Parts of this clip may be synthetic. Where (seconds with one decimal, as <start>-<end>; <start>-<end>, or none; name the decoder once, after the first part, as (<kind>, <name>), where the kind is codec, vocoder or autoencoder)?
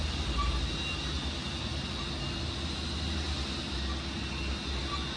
none